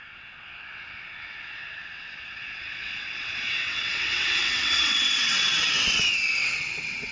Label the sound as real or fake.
fake